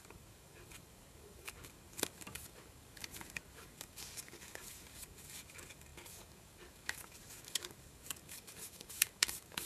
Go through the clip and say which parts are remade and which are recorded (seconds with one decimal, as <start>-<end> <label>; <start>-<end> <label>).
0.0-9.7 remade